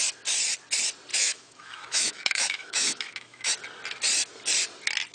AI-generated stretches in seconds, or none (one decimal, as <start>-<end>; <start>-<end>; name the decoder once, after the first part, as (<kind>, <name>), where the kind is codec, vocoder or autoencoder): 1.1-3.5 (autoencoder, DAC-VAE)